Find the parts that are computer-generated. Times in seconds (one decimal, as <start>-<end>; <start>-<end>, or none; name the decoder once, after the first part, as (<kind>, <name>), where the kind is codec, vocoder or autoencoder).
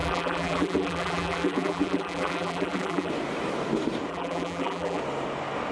0.0-3.1 (vocoder, BigVGAN v2); 4.1-5.0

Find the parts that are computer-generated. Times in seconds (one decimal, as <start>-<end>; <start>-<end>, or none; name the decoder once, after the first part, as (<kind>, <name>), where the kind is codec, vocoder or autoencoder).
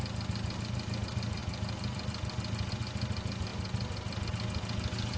none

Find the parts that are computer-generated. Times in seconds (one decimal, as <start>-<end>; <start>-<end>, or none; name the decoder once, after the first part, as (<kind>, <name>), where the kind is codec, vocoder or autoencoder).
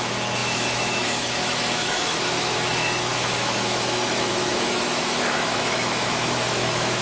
0.0-7.0 (autoencoder, DAC-VAE)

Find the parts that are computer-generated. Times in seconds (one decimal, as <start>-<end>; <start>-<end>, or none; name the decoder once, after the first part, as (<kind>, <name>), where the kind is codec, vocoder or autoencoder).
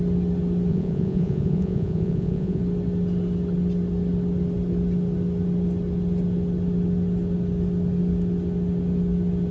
0.7-2.6 (vocoder, Vocos)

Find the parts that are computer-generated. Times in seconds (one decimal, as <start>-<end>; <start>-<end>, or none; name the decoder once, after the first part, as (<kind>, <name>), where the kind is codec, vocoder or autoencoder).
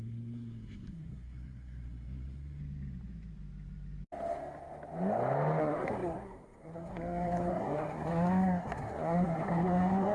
0.0-2.6 (codec, SNAC); 5.6-10.1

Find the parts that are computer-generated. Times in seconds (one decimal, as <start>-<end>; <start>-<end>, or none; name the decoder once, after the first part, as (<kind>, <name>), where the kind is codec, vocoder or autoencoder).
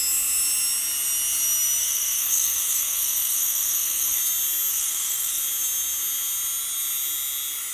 1.8-4.2 (codec, SNAC); 4.7-5.4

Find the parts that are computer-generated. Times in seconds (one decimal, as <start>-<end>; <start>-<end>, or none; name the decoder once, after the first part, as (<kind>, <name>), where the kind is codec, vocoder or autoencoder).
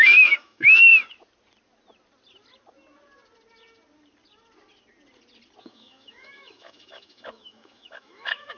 0.0-0.9 (autoencoder, DAC-VAE); 5.6-8.6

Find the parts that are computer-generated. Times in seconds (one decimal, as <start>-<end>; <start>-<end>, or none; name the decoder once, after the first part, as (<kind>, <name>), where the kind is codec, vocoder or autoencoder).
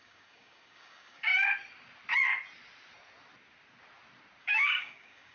0.0-1.3 (codec, DAC); 4.4-5.3